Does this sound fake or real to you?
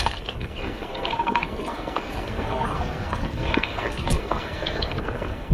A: fake